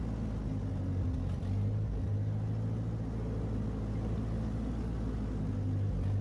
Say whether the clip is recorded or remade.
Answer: recorded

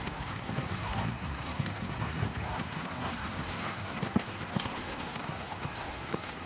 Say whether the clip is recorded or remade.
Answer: remade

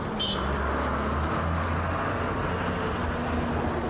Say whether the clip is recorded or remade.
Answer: recorded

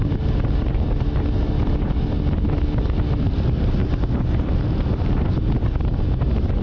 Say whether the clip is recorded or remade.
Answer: recorded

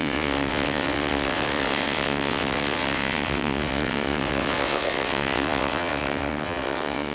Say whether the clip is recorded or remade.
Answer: remade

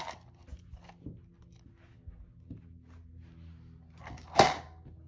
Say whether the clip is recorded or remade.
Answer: recorded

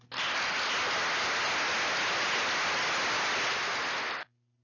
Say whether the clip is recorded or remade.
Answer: recorded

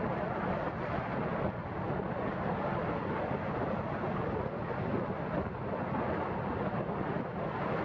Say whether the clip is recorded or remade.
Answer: recorded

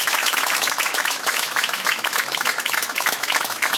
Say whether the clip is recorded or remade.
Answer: remade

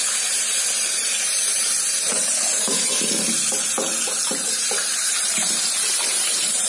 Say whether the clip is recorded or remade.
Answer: remade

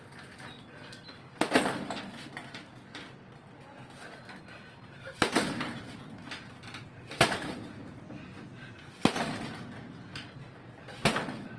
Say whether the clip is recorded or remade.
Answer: recorded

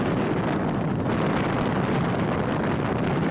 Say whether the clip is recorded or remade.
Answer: recorded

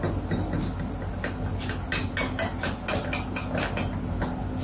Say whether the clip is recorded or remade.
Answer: recorded